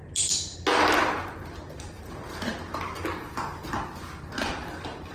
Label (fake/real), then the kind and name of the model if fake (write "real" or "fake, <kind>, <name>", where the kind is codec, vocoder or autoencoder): real